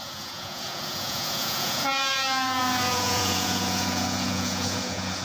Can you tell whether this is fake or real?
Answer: fake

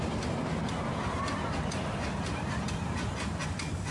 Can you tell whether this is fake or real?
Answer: real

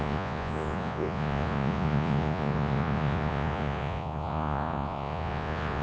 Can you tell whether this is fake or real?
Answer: fake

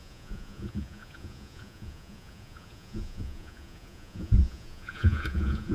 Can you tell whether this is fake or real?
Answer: fake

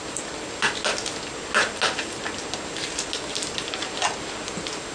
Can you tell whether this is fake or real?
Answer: real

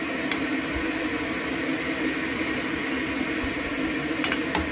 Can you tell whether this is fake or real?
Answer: real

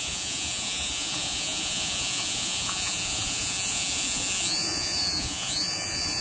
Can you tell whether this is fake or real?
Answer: fake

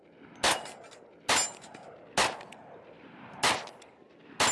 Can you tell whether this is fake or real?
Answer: real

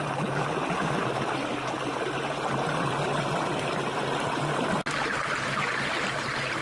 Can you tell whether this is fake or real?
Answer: real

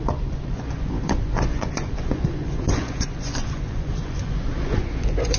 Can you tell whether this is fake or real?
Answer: fake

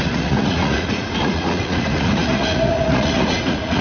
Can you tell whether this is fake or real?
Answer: fake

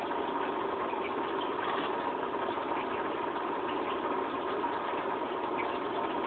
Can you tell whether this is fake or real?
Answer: real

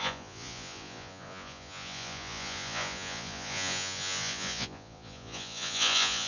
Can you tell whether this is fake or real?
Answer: fake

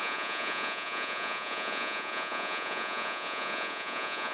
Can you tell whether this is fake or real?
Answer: fake